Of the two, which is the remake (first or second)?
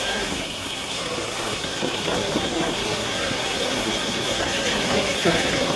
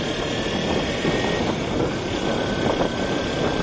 first